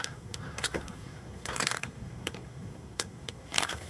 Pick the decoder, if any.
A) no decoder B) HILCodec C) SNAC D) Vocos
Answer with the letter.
C